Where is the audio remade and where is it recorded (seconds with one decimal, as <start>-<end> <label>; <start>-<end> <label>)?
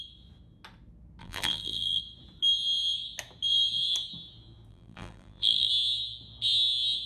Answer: 0.0-1.2 recorded; 1.2-2.0 remade; 2.0-4.7 recorded; 4.7-5.7 remade; 5.7-7.1 recorded